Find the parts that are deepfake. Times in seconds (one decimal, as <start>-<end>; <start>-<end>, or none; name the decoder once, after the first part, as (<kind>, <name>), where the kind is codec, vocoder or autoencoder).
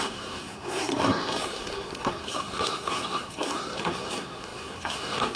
0.0-5.4 (codec, SNAC)